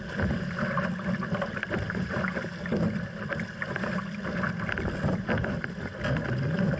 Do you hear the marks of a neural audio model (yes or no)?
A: no